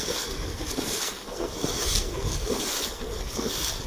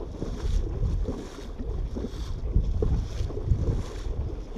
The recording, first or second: second